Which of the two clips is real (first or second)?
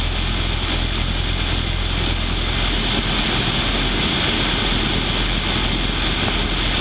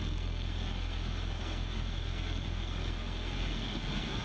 first